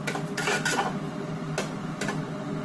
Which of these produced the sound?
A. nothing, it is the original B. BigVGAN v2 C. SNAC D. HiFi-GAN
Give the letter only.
A